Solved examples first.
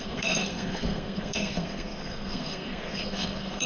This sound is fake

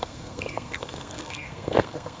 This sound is fake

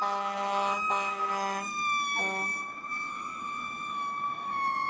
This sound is fake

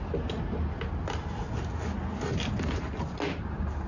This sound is real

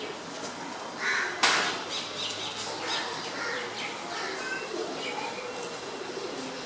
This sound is real